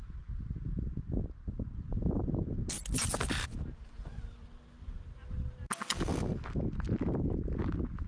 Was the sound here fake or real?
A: real